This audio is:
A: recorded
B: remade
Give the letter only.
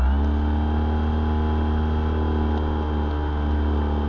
A